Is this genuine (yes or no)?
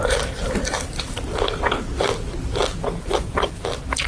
yes